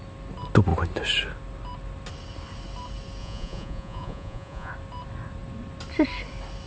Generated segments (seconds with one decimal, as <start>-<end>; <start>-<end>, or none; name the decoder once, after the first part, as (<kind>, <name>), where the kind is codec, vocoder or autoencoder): 3.2-4.7 (vocoder, Vocos)